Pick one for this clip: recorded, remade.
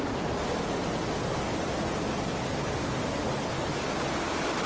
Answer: recorded